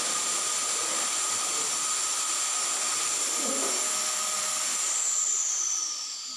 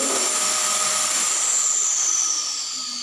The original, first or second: first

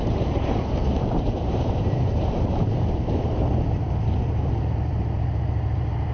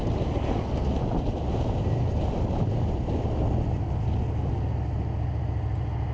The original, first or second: second